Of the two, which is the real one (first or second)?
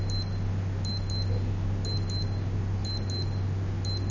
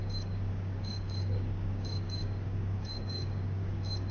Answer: first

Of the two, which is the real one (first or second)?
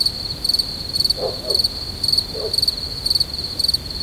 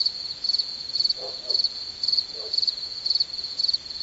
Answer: first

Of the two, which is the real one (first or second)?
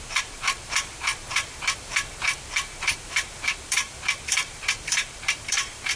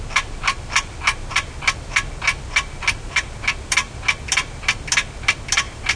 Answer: second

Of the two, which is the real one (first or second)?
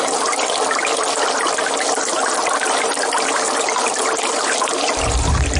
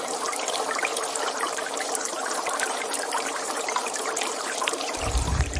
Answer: first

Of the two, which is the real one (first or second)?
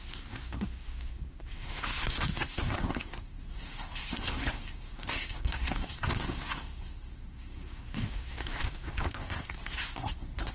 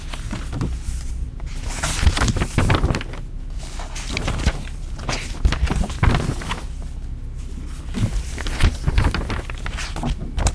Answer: second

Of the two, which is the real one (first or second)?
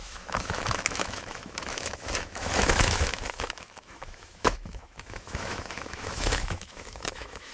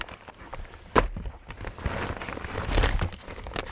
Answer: second